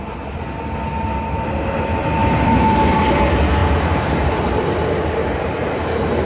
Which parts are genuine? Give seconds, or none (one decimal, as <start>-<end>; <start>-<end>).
0.0-2.2; 3.2-3.6; 4.6-5.2